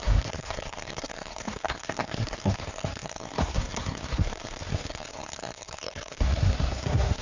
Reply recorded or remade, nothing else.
remade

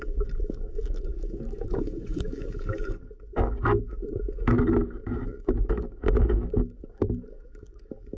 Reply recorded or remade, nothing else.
remade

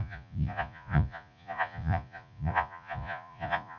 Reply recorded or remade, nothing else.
remade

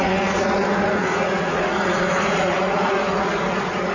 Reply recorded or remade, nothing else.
remade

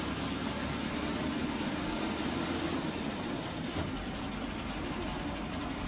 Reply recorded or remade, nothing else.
recorded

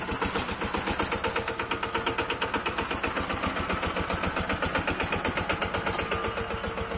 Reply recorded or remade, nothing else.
recorded